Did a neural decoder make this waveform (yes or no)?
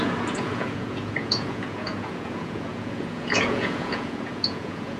yes